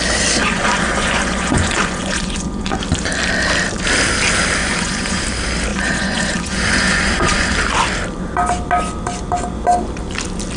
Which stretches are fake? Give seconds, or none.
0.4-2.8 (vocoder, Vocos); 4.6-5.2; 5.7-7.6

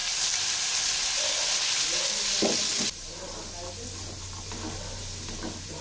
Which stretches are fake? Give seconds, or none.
none

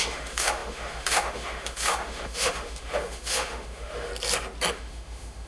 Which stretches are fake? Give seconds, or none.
0.0-4.1 (autoencoder, DAC-VAE); 4.7-5.5

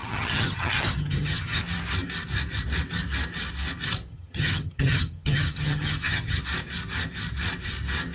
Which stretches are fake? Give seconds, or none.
0.0-1.6 (vocoder, HiFi-GAN); 4.1-6.4

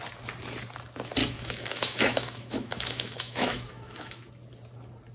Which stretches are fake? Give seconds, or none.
1.2-4.3 (autoencoder, DAC-VAE)

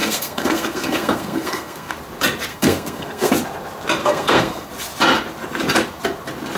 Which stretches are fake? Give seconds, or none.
0.0-1.9 (codec, SNAC); 2.5-3.3; 4.0-4.7